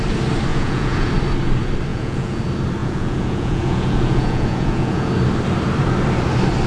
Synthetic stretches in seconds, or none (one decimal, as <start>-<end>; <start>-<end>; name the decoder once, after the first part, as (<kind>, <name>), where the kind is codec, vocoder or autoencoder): 0.5-1.1 (vocoder, Vocos); 1.9-2.4; 2.8-5.1